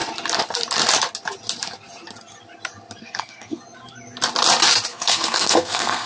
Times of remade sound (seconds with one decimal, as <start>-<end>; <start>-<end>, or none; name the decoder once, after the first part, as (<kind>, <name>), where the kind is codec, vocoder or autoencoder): 3.0-3.6 (codec, SNAC); 4.9-6.1